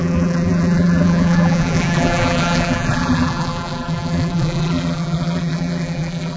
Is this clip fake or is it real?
fake